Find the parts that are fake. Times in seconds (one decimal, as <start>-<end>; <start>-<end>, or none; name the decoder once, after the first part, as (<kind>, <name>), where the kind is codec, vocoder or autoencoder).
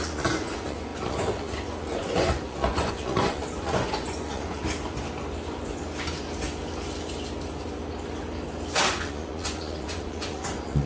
0.0-4.6 (vocoder, Vocos); 8.9-10.9